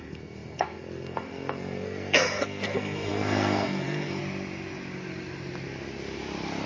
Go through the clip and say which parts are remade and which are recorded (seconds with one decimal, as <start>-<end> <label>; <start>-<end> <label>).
0.0-4.2 remade; 4.2-6.7 recorded